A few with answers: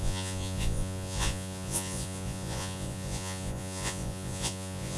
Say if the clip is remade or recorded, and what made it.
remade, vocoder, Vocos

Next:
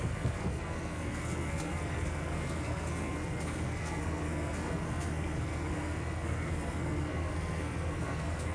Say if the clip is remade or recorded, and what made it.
remade, codec, SNAC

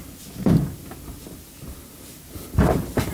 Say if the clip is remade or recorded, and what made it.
recorded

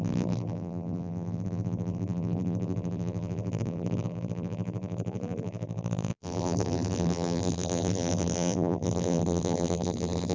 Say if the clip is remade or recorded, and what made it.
remade, vocoder, BigVGAN v2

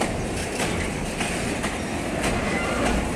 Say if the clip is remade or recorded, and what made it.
recorded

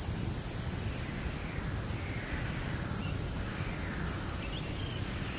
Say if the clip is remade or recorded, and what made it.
remade, vocoder, BigVGAN v2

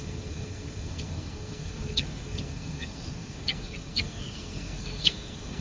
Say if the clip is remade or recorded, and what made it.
remade, codec, SNAC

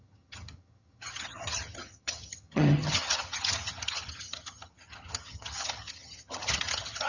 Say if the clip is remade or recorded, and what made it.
remade, vocoder, HiFi-GAN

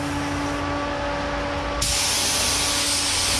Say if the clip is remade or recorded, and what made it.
recorded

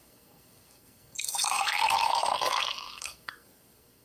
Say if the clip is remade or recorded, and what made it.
remade, codec, SNAC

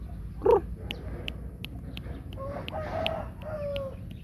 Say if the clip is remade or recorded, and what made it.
recorded